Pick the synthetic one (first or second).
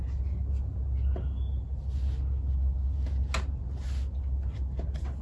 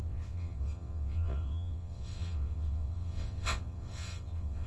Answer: second